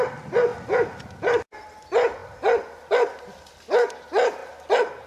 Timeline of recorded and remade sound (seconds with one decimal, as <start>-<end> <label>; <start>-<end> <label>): 0.0-5.1 recorded